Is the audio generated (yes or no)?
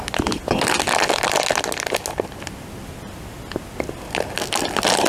no